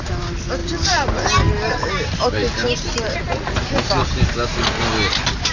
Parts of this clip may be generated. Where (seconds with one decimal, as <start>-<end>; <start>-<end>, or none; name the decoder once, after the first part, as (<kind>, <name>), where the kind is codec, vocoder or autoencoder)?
0.6-3.6 (vocoder, BigVGAN v2)